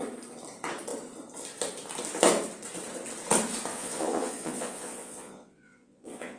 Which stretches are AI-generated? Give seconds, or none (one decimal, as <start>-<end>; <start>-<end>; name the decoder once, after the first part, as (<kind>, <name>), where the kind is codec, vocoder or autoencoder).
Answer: 3.7-6.4 (vocoder, Vocos)

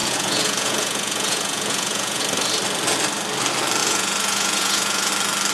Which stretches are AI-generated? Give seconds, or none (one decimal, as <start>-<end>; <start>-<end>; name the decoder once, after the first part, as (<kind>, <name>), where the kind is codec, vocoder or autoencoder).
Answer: 0.0-2.2 (vocoder, Vocos); 3.8-5.1

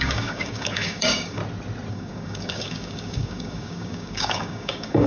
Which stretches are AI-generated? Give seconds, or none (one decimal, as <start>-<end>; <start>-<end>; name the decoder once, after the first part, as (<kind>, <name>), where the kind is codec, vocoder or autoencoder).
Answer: 0.0-1.4 (codec, DAC); 1.9-5.1

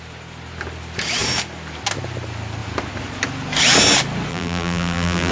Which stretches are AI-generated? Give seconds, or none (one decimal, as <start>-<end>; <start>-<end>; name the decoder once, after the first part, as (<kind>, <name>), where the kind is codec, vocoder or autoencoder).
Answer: 4.3-5.3 (vocoder, BigVGAN v2)

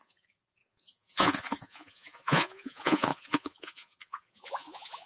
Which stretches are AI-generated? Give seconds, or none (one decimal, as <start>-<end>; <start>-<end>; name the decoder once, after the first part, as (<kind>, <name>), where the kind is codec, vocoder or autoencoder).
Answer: 0.0-5.1 (vocoder, Vocos)

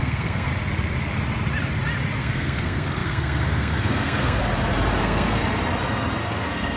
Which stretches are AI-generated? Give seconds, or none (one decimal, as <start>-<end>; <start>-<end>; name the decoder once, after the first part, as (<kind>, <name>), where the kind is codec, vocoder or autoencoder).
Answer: 0.0-0.5 (codec, SNAC); 2.2-4.4; 5.0-5.4; 6.2-6.8